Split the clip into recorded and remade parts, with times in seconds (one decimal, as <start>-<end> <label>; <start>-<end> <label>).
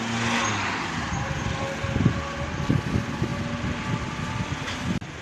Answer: 0.0-5.2 recorded